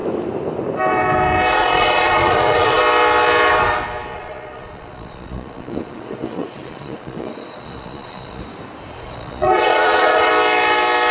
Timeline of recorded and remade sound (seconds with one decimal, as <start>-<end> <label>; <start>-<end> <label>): 0.0-1.5 recorded; 1.5-2.8 remade; 2.8-4.1 recorded; 4.1-8.4 remade; 8.4-8.9 recorded; 8.9-10.3 remade; 10.3-11.1 recorded